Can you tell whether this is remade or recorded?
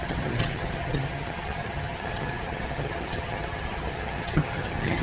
remade